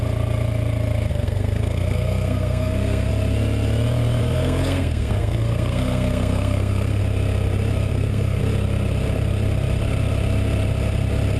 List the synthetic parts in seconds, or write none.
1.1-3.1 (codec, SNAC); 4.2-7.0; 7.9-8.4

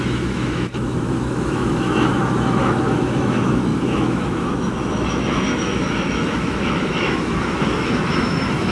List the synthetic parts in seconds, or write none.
0.0-8.7 (autoencoder, DAC-VAE)

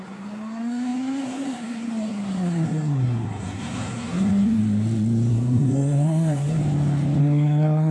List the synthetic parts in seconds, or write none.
0.0-4.6 (codec, SNAC); 5.3-6.6; 7.2-7.9

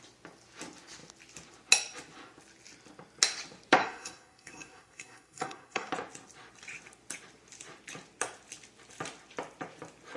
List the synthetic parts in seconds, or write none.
3.8-5.9 (codec, SNAC)